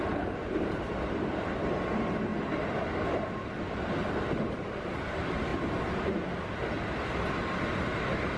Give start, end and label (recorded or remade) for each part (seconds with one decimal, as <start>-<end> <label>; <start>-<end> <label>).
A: 0.0-2.3 remade; 2.3-3.1 recorded; 3.1-5.5 remade; 5.5-8.4 recorded